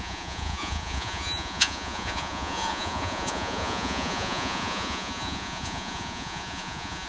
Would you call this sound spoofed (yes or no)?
yes